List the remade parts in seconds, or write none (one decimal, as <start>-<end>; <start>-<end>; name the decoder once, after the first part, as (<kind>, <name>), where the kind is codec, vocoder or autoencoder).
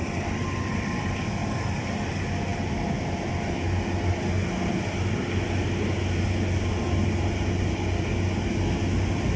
none